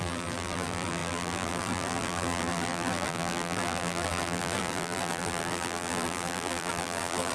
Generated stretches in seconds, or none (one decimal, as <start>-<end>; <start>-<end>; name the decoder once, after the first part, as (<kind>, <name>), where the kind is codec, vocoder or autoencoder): 0.0-7.3 (vocoder, BigVGAN v2)